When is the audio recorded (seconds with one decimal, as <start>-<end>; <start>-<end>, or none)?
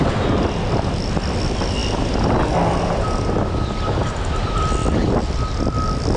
0.0-6.2